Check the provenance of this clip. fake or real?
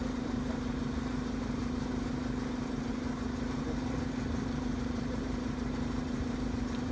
fake